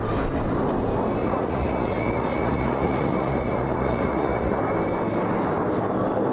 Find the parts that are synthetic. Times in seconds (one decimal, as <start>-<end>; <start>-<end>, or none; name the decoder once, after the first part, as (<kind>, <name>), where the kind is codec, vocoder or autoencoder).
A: 1.2-4.6 (vocoder, Vocos)

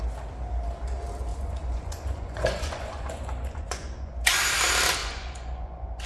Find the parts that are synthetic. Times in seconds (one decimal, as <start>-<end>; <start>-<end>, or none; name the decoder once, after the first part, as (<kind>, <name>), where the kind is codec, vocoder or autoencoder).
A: 1.3-4.4 (vocoder, Vocos); 5.0-6.1

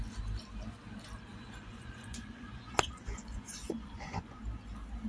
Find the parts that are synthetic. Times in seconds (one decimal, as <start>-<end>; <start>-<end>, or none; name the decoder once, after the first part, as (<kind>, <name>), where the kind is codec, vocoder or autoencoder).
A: 1.3-4.4 (vocoder, Vocos)

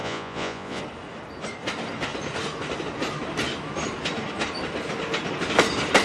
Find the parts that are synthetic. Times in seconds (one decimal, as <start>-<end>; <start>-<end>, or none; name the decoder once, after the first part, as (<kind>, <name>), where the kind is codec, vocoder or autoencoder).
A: 0.0-0.8 (vocoder, Vocos)